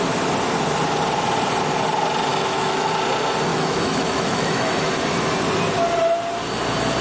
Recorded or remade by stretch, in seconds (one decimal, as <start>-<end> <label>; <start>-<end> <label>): 0.0-2.3 recorded; 2.3-2.9 remade; 2.9-3.5 recorded; 3.5-4.9 remade; 4.9-7.0 recorded